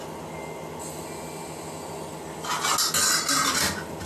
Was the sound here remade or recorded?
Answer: recorded